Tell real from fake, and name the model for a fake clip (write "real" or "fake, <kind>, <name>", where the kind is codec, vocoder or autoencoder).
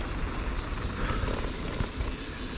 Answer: real